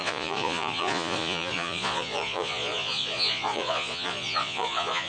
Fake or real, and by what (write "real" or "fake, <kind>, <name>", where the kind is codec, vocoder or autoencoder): fake, vocoder, Vocos